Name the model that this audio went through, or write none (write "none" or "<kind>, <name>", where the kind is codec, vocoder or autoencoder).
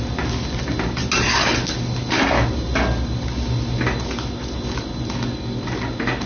none